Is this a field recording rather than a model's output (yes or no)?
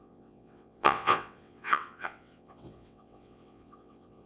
no